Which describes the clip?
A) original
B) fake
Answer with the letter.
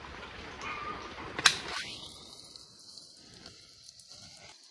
A